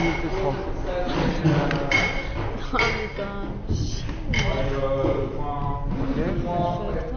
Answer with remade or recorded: recorded